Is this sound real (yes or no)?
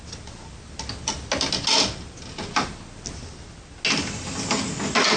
yes